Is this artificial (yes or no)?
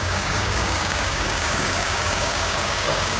yes